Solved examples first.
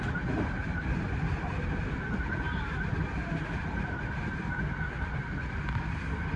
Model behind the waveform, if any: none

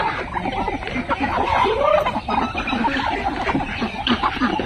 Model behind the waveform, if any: vocoder, BigVGAN v2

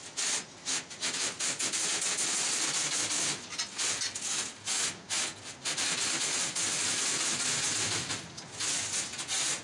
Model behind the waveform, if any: none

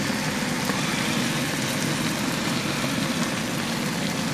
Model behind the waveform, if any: none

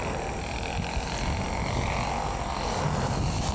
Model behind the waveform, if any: none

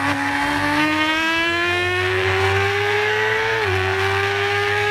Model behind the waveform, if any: codec, SNAC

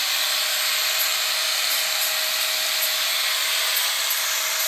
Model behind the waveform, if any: none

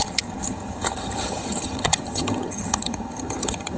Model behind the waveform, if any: vocoder, HiFi-GAN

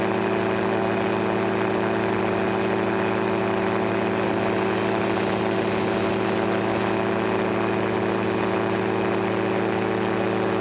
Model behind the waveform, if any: none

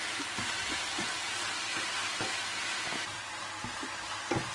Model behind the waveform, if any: none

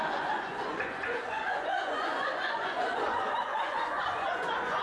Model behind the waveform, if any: vocoder, Vocos